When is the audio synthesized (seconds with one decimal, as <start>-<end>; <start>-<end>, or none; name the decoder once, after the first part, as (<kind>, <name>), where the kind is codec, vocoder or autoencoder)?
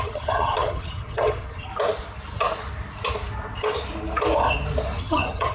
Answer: 0.0-1.7 (vocoder, HiFi-GAN); 5.0-5.5